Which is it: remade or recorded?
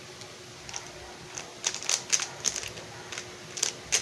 recorded